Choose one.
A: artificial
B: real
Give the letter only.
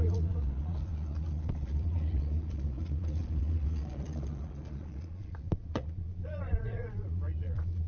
A